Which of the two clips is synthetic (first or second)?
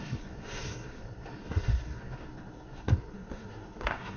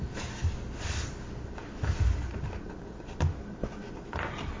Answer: first